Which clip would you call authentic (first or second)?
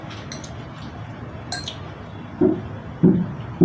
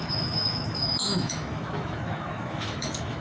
first